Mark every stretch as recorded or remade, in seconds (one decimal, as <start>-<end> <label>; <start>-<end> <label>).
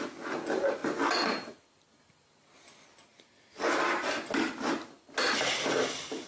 0.0-6.3 recorded